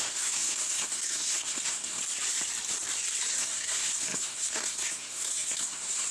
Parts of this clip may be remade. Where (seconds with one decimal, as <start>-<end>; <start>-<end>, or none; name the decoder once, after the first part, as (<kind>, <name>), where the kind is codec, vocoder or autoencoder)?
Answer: 0.0-2.0 (codec, SNAC); 3.4-6.1